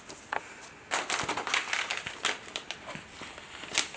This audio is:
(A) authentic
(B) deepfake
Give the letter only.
A